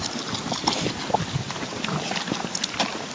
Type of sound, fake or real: real